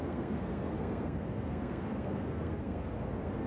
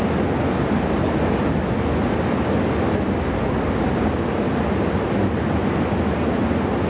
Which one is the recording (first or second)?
second